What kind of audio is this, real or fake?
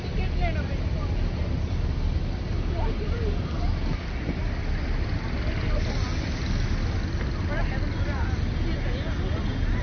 real